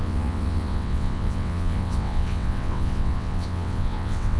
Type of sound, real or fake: fake